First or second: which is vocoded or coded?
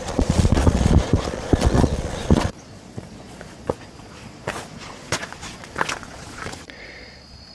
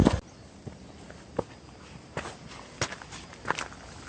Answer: first